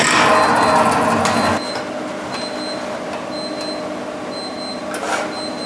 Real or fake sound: real